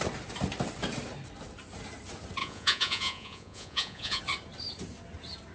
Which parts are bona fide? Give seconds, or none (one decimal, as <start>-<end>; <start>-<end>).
0.0-2.4; 4.2-5.5

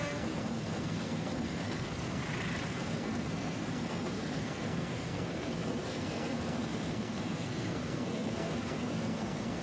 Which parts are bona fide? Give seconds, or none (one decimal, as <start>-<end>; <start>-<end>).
2.2-2.7

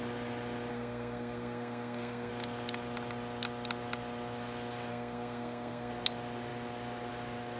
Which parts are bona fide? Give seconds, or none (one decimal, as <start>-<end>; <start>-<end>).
0.0-0.7; 2.3-4.9; 5.9-7.6

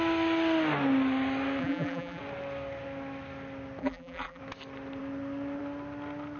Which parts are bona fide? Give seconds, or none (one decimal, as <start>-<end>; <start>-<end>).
0.0-1.6; 2.2-3.8; 4.4-6.4

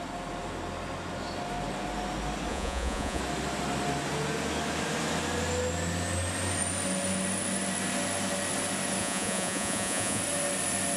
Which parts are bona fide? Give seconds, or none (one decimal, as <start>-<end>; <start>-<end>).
0.0-2.5; 3.2-9.0; 10.2-11.0

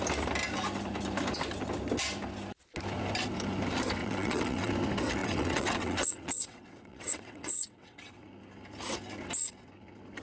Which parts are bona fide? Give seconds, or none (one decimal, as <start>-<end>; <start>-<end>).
0.0-4.0; 4.7-5.2; 8.1-10.2

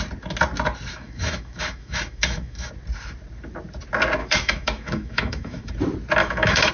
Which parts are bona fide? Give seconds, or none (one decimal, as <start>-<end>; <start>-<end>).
0.0-0.9; 2.7-4.2; 5.7-6.2

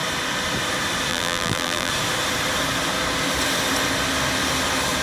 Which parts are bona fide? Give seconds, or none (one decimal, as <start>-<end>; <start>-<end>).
0.0-1.1; 1.9-5.0